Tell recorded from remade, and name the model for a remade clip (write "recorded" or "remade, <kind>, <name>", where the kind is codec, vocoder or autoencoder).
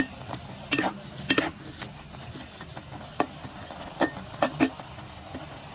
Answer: recorded